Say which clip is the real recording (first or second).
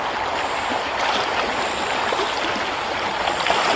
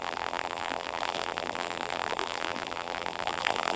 first